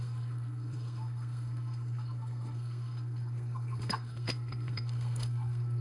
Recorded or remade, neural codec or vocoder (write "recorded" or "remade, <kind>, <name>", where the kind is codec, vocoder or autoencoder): remade, codec, SNAC